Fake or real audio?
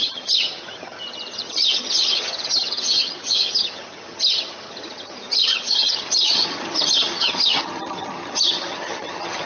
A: fake